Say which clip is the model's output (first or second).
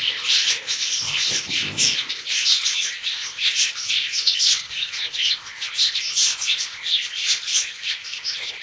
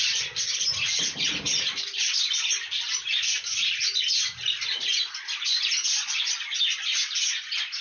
first